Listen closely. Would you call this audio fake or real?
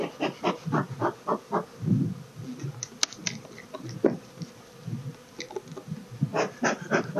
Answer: real